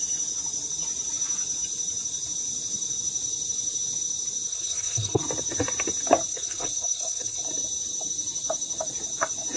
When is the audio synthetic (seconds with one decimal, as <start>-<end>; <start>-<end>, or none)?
4.5-5.2; 6.3-7.4